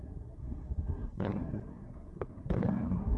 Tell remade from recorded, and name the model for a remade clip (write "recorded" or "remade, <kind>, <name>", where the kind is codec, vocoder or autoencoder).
remade, codec, SNAC